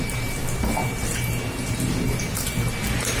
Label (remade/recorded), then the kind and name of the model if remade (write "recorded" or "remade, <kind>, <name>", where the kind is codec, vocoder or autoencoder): remade, vocoder, BigVGAN v2